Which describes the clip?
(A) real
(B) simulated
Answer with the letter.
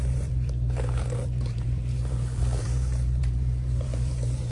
B